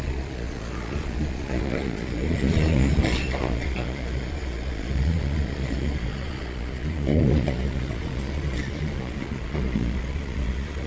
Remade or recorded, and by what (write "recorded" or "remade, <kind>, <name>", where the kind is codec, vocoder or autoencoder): remade, vocoder, Vocos